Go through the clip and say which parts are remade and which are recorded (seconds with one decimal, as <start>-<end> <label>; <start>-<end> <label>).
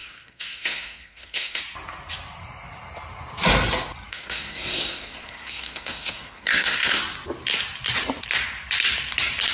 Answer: 0.0-1.6 remade; 1.6-4.1 recorded; 4.1-7.0 remade; 7.0-9.5 recorded